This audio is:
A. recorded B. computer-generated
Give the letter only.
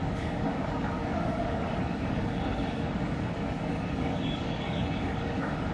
B